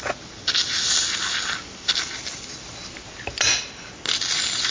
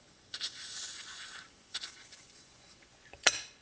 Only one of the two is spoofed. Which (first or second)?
second